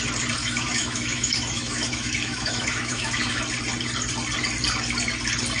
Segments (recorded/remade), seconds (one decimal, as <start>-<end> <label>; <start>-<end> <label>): 0.0-0.4 recorded; 0.4-3.4 remade; 3.4-5.6 recorded